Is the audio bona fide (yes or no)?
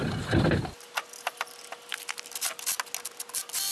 yes